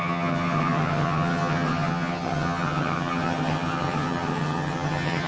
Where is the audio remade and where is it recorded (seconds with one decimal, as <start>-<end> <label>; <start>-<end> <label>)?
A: 0.0-5.3 remade